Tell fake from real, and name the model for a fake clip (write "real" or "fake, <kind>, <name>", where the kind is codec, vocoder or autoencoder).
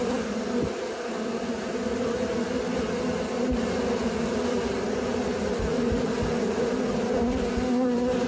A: real